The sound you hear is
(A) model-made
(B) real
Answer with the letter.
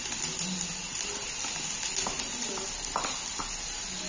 B